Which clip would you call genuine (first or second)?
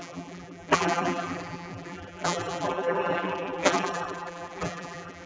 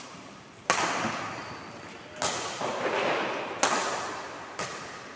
second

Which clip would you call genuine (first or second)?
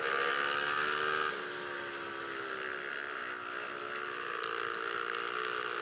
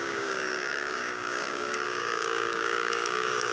first